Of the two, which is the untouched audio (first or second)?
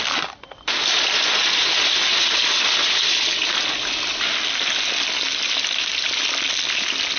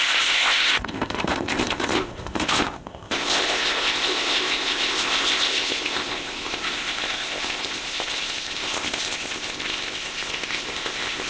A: first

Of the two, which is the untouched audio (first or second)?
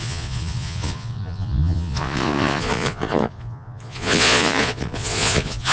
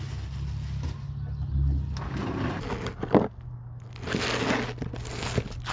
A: second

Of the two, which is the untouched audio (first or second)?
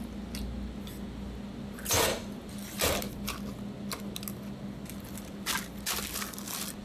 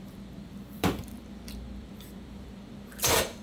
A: first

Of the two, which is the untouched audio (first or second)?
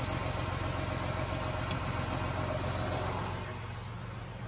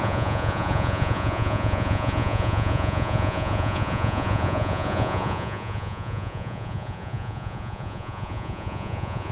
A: first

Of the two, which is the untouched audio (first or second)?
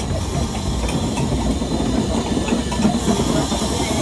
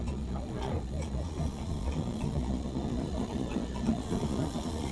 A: first